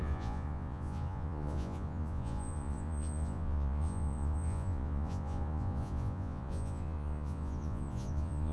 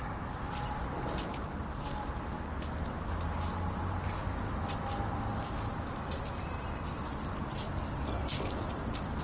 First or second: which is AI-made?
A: first